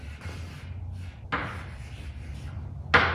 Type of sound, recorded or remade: recorded